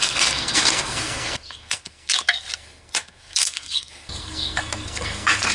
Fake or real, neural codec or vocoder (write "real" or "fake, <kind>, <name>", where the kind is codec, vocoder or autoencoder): fake, codec, SNAC